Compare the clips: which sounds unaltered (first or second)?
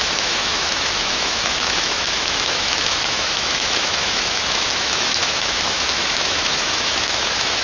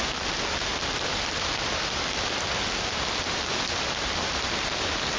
second